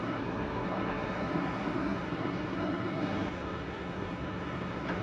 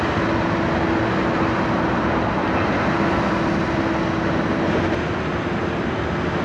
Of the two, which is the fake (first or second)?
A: first